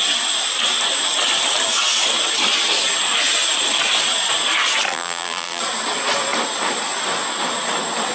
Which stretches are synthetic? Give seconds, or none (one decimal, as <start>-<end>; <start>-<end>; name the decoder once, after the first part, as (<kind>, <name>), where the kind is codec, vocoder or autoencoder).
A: 4.9-5.6 (vocoder, BigVGAN v2)